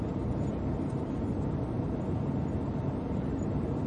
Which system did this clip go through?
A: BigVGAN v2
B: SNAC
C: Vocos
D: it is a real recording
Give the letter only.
A